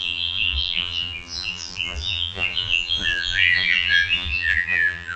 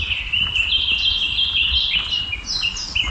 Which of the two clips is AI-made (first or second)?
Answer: first